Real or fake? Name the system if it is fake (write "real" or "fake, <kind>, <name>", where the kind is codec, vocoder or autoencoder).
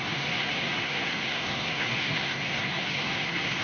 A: fake, codec, SNAC